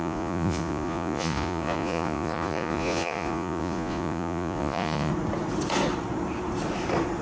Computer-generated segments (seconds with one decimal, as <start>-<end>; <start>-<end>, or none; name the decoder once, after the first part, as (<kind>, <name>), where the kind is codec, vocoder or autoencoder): 0.0-5.1 (vocoder, Vocos)